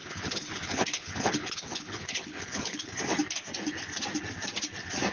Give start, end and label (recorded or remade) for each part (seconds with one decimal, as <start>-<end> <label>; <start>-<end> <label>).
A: 0.0-2.9 remade; 2.9-5.1 recorded